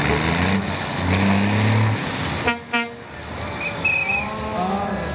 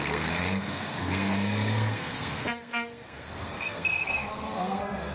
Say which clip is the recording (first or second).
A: first